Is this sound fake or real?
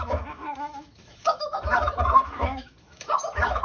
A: fake